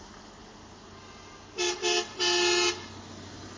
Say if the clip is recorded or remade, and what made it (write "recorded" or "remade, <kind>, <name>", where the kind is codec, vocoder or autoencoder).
recorded